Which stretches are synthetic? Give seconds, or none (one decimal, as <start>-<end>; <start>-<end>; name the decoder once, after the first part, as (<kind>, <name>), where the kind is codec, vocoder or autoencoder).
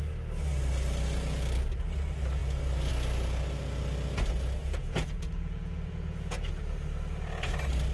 4.6-6.5 (vocoder, Vocos)